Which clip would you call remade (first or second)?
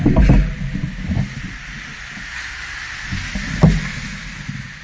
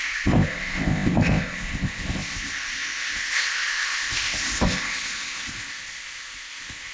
second